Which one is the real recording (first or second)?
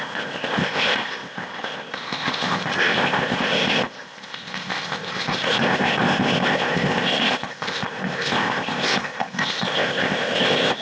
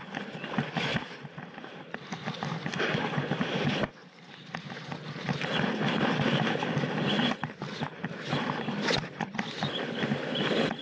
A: second